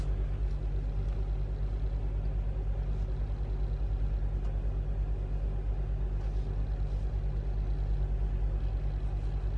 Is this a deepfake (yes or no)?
no